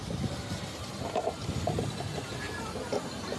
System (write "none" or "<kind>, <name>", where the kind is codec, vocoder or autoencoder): none